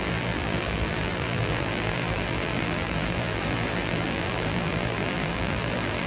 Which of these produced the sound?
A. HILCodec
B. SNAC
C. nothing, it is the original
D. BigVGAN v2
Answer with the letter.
D